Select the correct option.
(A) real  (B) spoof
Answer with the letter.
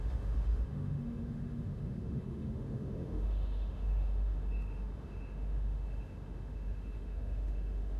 B